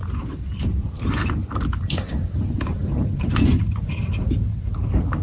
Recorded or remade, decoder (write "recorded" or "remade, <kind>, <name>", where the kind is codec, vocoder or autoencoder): recorded